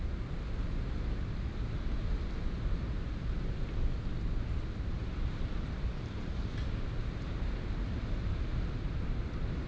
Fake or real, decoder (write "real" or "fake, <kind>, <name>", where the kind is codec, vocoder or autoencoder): real